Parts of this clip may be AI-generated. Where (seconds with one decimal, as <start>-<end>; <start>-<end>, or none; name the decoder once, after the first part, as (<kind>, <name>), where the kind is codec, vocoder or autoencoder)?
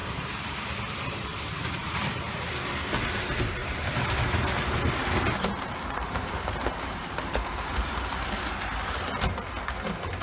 0.0-2.5 (vocoder, BigVGAN v2); 3.6-7.0